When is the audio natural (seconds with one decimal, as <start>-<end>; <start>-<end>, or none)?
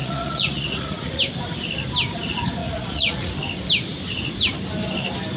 1.2-2.6; 3.3-5.4